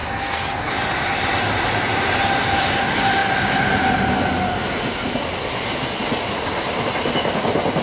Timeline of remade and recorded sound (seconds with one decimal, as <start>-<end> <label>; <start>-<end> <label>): 0.0-0.7 remade; 0.7-7.8 recorded